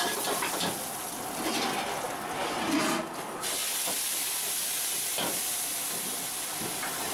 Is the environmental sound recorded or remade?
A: recorded